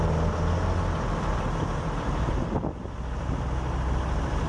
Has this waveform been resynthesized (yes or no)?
no